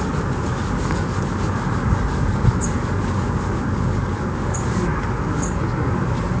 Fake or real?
fake